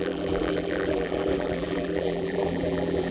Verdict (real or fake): fake